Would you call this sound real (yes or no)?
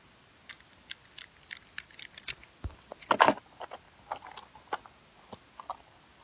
yes